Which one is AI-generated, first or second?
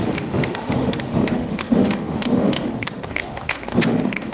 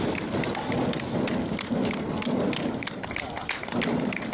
first